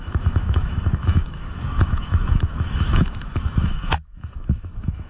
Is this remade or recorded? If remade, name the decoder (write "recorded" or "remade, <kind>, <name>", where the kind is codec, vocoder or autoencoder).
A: remade, autoencoder, DAC-VAE